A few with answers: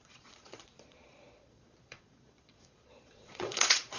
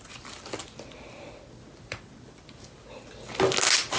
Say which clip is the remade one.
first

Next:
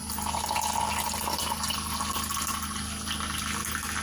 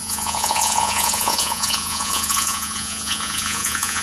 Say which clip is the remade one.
second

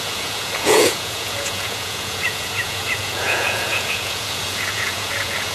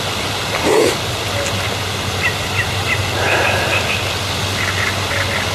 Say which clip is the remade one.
first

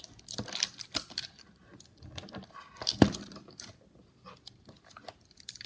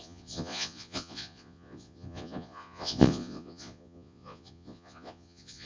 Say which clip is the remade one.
second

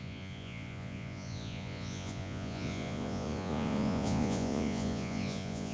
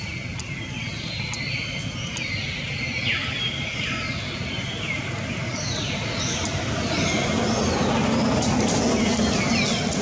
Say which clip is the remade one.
first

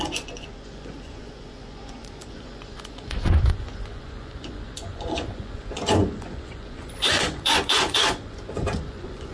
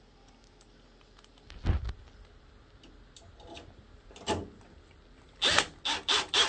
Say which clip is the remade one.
first